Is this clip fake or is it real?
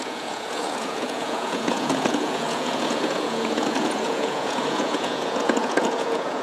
fake